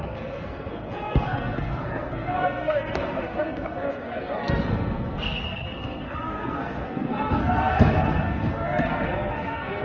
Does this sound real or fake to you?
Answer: fake